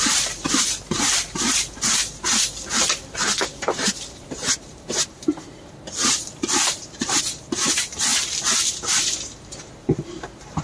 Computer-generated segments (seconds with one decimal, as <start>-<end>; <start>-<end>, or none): 0.0-8.1; 8.7-10.6